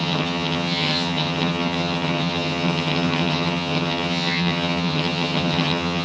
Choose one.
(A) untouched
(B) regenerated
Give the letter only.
B